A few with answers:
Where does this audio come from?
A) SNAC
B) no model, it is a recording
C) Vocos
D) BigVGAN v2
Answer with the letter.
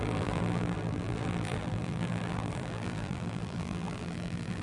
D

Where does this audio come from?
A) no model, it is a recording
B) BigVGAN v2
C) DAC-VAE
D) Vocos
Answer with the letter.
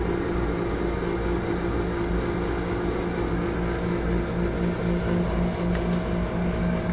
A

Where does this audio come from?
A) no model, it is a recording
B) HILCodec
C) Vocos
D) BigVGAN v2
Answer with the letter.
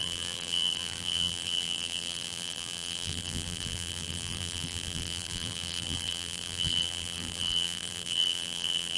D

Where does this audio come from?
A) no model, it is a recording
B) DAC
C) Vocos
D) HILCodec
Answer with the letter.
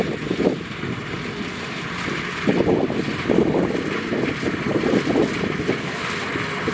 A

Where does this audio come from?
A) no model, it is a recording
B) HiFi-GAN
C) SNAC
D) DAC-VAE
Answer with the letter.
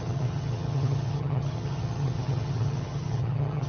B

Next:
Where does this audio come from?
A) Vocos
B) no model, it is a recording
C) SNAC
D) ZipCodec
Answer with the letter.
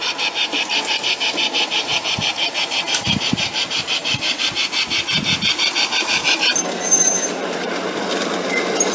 B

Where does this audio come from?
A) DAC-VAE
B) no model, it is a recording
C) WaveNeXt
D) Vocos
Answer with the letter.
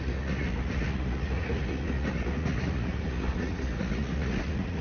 D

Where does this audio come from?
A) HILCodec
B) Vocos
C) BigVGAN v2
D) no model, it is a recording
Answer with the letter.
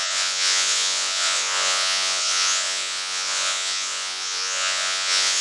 B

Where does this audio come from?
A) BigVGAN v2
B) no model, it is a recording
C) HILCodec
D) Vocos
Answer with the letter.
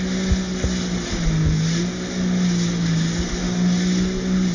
B